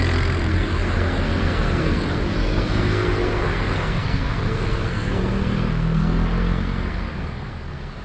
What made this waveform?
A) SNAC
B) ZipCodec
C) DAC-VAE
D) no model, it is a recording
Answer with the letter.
A